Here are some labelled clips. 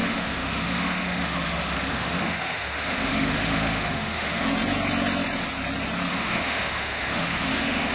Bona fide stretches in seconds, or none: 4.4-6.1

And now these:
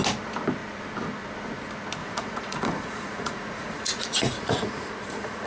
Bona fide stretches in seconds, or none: 0.0-2.0

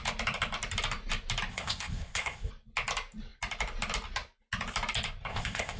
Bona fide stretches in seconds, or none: 0.0-1.5; 2.5-5.3

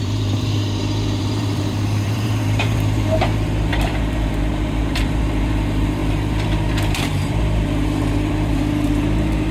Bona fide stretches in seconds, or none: none

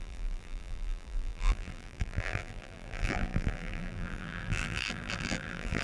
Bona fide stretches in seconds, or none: none